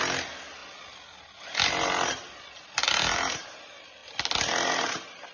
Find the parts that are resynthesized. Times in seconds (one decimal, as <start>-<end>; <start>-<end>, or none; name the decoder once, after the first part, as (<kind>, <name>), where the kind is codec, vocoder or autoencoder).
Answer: none